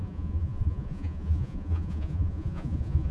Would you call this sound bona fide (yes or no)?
no